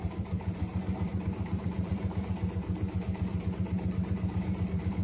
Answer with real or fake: fake